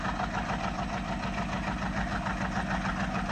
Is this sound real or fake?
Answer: real